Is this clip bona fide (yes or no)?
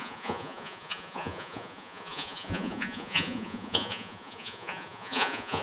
no